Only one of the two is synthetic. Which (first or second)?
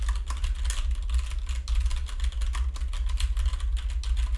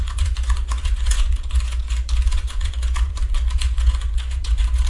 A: second